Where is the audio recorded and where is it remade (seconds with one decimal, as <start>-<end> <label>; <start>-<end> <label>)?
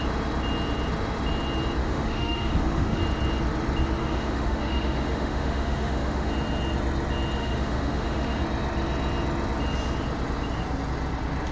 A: 0.0-1.8 recorded; 1.8-3.0 remade; 3.0-4.0 recorded; 4.0-6.3 remade; 6.3-7.4 recorded; 7.4-8.4 remade; 8.4-11.5 recorded